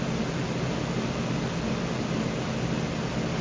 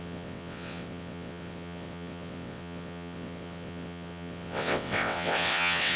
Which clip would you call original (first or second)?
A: first